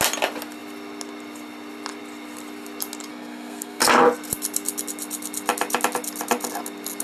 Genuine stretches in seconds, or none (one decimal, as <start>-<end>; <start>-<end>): 0.0-3.1; 3.8-7.0